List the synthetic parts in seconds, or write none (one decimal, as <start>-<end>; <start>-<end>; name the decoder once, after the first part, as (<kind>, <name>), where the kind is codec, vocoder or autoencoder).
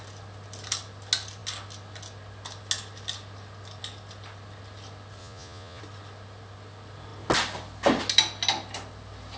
5.2-5.8 (vocoder, Vocos)